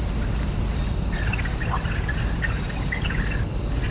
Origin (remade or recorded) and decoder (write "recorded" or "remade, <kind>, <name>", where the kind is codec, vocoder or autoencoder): recorded